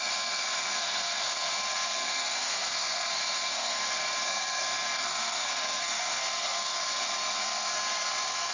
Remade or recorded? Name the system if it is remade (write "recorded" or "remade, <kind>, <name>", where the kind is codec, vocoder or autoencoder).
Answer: remade, codec, SNAC